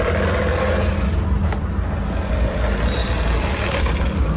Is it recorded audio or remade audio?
recorded